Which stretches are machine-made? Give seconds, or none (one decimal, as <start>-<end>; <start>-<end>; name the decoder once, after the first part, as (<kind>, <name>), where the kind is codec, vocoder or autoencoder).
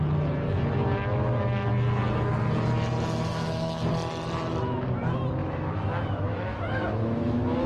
1.2-1.7 (autoencoder, DAC-VAE); 3.3-3.9; 5.4-7.7